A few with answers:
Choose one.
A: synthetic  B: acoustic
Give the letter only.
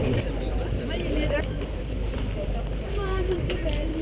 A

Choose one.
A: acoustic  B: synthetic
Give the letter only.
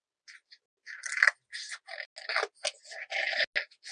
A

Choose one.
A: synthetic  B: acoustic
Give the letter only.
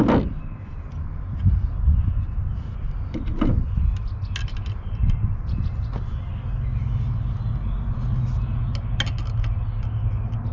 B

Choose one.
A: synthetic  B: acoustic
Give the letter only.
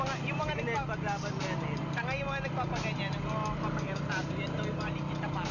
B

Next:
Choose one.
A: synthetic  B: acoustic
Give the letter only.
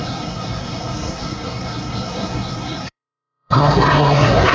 A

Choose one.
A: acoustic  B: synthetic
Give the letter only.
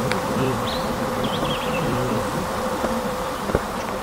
B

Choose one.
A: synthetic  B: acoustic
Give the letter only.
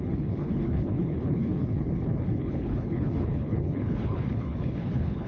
A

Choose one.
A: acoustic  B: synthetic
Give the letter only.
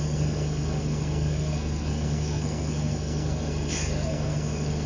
B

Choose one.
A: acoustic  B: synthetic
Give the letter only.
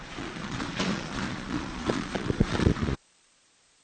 B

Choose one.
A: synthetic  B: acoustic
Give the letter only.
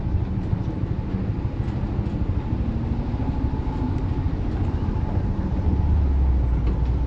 B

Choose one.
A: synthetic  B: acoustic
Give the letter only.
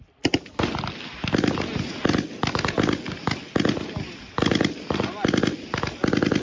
B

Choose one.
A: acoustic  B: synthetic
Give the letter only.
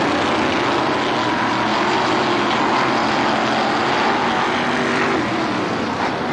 A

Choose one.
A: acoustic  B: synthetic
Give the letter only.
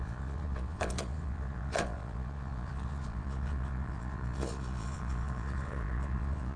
B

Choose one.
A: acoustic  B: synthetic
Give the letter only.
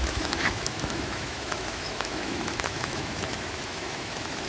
B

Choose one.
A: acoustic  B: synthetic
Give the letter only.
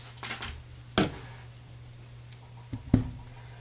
A